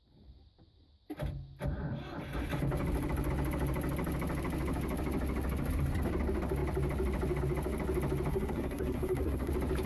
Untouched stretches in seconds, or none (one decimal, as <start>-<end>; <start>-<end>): 0.0-8.3; 9.5-9.9